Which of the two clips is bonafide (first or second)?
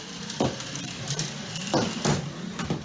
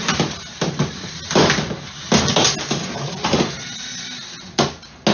second